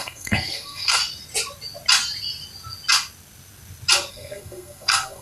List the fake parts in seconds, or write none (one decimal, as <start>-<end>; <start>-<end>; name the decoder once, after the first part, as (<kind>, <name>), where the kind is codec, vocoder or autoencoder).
0.0-1.0 (codec, SNAC); 4.1-5.2